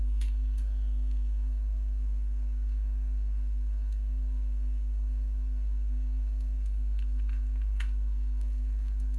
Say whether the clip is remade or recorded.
remade